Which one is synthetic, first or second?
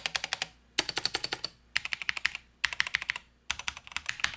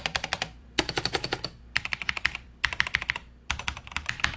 second